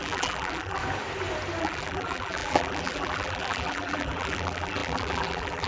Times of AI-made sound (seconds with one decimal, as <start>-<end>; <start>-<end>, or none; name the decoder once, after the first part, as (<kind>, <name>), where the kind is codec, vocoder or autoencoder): 0.0-0.8 (vocoder, BigVGAN v2); 1.6-5.7